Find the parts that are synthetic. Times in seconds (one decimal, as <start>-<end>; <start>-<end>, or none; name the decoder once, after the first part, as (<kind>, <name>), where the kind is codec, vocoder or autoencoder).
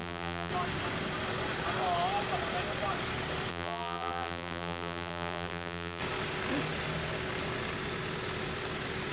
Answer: 0.0-0.5 (vocoder, BigVGAN v2); 3.5-6.0